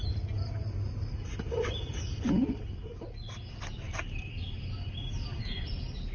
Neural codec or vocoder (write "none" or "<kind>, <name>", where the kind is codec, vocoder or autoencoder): none